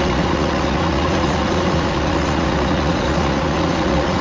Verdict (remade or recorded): remade